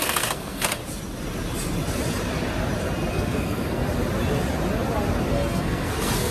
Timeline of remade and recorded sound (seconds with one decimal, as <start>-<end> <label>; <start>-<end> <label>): 0.0-0.8 remade; 0.8-3.1 recorded; 3.1-3.8 remade; 3.8-5.2 recorded; 5.2-6.3 remade